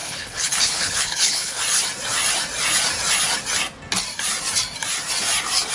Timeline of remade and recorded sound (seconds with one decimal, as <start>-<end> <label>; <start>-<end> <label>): 0.0-1.6 remade; 1.6-5.7 recorded